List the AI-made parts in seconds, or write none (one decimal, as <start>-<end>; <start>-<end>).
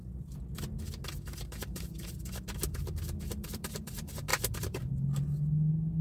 1.1-3.9; 4.3-4.9